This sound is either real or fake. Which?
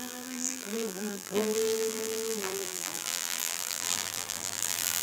fake